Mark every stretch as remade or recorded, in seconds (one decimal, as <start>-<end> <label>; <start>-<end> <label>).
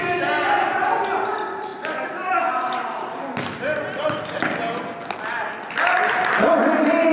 0.0-7.1 recorded